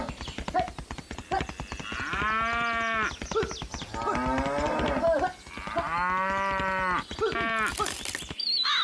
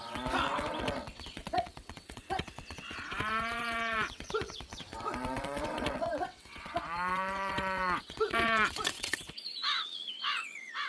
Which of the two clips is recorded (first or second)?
first